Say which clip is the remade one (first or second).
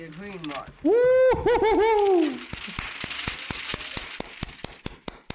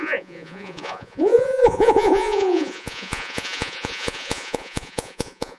second